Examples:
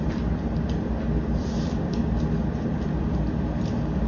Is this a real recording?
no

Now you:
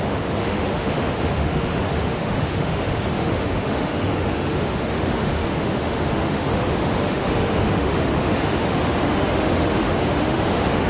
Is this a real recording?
no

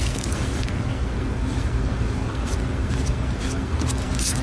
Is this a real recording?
no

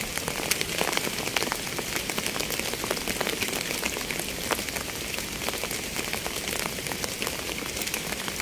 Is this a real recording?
yes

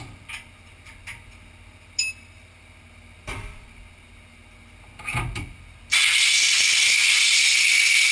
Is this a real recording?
yes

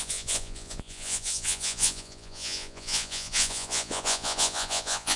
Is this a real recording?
no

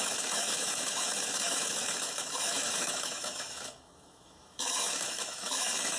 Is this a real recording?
no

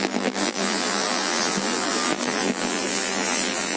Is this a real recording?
no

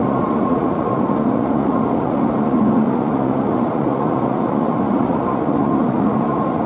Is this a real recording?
no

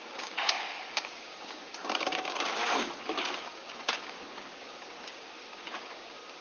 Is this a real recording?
no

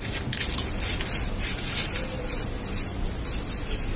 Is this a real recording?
yes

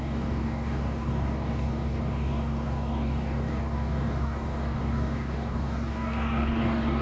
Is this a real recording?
no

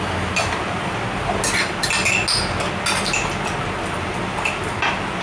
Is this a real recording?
yes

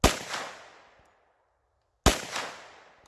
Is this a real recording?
yes